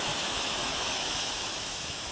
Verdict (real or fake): fake